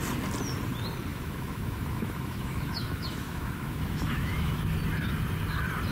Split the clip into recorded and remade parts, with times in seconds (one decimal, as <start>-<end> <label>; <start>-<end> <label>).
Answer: 0.0-1.1 recorded; 1.1-4.6 remade; 4.6-5.9 recorded